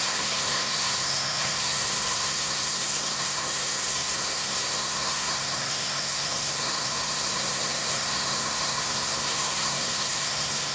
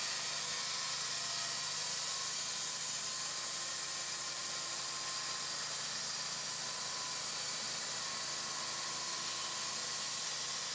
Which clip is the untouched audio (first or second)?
second